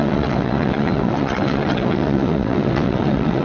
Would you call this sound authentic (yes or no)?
no